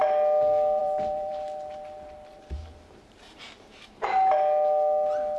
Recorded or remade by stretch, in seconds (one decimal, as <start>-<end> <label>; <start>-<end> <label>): 0.0-0.8 recorded; 0.8-4.0 remade; 4.0-5.4 recorded